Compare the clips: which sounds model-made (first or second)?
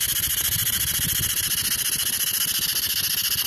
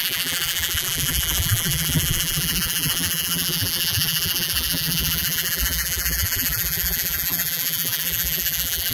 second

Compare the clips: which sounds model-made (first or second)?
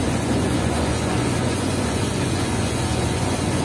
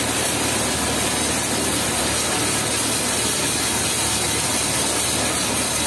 first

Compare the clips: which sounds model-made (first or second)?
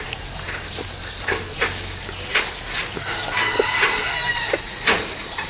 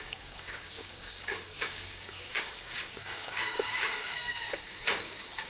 second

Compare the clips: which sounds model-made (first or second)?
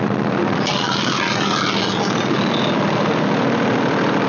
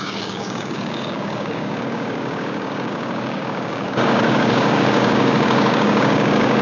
second